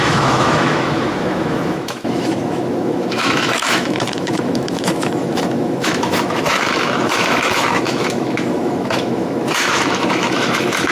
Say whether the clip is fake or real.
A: fake